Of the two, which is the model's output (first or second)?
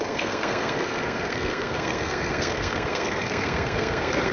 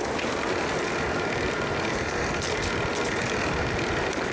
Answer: first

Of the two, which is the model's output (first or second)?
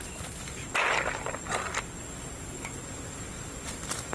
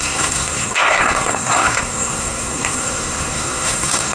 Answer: second